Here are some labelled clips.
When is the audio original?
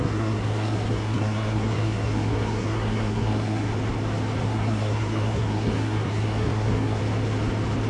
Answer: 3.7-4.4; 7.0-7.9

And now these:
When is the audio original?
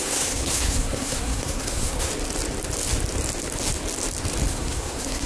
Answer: 2.1-4.5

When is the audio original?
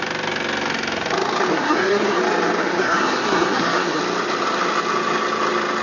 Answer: 0.0-1.5; 2.2-2.6; 4.0-5.8